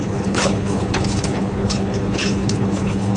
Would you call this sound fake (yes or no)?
yes